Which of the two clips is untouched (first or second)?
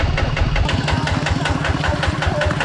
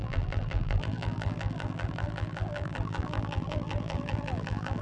first